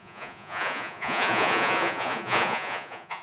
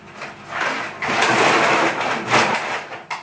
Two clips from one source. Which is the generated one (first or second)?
first